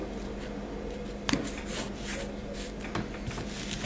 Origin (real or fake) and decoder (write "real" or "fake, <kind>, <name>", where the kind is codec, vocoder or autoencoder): real